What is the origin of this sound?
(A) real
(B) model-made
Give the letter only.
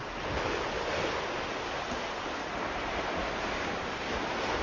A